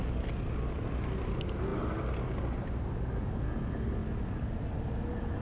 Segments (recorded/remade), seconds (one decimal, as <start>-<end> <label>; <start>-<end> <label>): 0.0-5.4 recorded